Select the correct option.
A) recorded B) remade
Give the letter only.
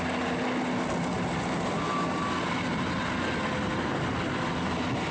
A